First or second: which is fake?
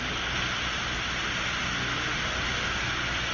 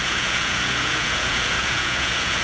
second